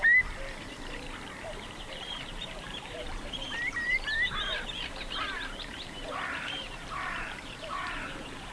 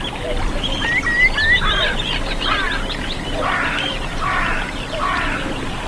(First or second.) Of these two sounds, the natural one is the second